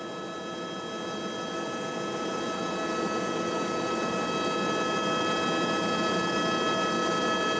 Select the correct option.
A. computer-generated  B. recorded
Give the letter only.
B